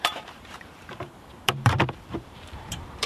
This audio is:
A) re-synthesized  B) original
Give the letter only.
A